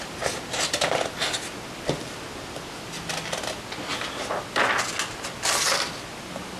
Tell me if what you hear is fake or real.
real